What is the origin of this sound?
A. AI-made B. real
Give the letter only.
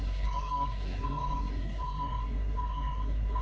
A